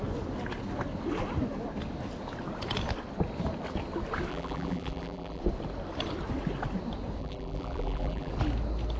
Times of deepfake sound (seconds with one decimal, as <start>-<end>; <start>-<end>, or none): 4.3-5.4; 7.2-8.3